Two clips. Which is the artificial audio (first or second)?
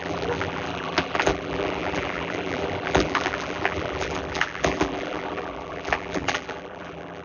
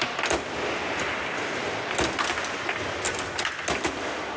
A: first